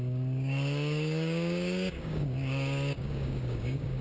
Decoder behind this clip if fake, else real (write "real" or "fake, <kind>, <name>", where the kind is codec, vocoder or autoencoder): fake, codec, DAC